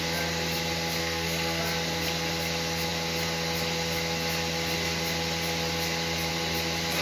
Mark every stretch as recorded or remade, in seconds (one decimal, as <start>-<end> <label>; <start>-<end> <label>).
0.0-1.0 recorded; 1.0-1.6 remade; 1.6-7.0 recorded